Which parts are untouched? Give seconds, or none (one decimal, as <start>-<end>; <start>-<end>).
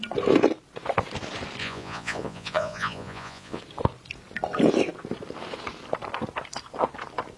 0.0-1.6; 3.6-7.4